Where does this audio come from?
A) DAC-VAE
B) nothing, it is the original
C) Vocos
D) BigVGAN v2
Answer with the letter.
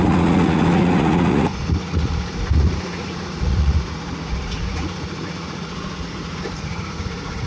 C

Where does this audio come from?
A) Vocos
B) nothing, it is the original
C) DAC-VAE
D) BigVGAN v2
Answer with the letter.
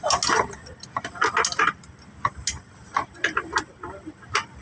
B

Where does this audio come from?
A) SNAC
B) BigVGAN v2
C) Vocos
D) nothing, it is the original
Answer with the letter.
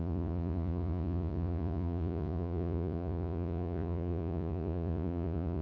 C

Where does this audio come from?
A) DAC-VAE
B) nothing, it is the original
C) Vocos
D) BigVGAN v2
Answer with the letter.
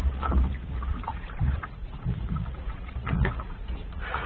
C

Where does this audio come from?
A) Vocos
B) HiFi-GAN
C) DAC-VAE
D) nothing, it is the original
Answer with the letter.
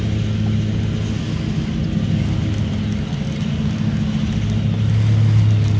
D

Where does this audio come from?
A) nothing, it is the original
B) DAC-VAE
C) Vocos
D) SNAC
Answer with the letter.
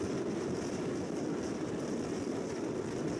A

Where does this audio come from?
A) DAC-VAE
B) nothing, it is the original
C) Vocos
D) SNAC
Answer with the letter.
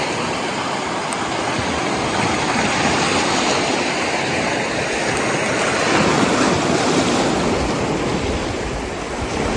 B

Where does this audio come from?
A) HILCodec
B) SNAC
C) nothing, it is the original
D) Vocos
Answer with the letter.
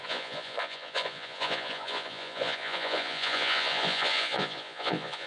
D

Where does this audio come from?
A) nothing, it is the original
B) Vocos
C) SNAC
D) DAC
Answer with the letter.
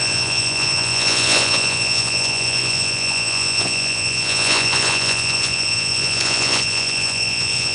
B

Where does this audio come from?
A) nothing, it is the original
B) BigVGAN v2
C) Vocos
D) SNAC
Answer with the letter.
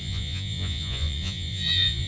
C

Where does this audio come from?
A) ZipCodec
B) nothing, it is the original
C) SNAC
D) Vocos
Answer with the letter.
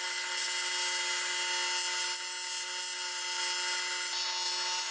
B